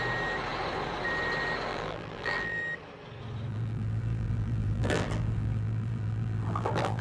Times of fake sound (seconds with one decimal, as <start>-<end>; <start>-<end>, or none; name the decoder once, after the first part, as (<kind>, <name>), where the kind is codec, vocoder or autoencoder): 1.7-2.6 (vocoder, BigVGAN v2); 3.5-7.0